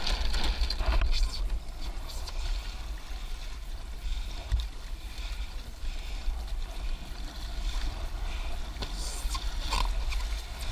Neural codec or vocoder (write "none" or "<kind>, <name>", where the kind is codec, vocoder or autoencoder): none